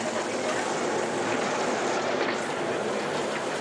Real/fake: real